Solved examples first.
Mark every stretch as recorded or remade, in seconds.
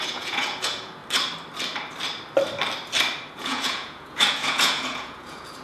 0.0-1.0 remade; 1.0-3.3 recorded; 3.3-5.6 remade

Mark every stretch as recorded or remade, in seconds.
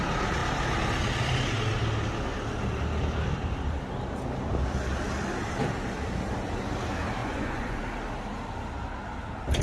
0.0-7.2 recorded; 7.2-7.8 remade; 7.8-9.6 recorded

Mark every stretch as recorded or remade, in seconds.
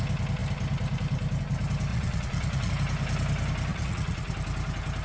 0.0-1.9 recorded; 1.9-2.7 remade; 2.7-3.7 recorded; 3.7-4.3 remade; 4.3-5.0 recorded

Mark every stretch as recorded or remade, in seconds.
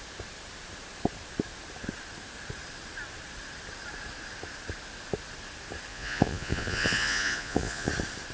0.0-5.9 recorded; 5.9-7.9 remade; 7.9-8.3 recorded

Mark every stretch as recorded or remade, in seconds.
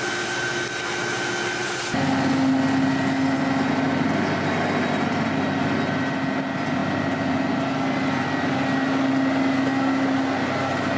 0.0-11.0 recorded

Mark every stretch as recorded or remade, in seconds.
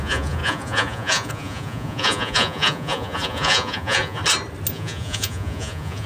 0.0-4.2 remade; 4.2-4.7 recorded; 4.7-6.1 remade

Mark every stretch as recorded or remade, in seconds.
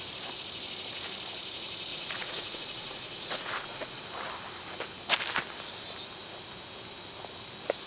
0.0-1.9 recorded; 1.9-4.0 remade; 4.0-7.9 recorded